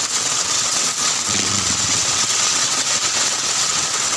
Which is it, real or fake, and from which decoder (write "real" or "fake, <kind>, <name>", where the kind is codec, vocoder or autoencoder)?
fake, vocoder, WaveNeXt